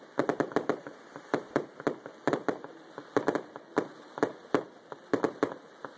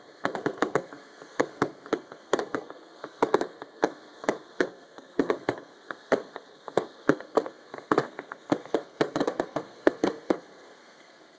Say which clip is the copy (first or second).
second